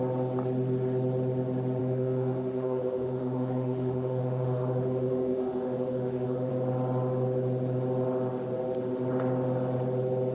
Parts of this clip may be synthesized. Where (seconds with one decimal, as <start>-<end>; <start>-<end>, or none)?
1.8-6.5